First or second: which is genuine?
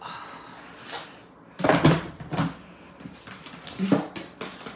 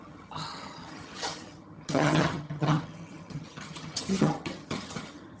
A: first